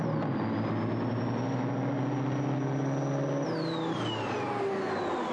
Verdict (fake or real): real